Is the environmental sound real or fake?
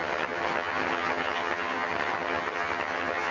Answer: fake